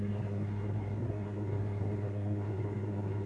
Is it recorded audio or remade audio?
remade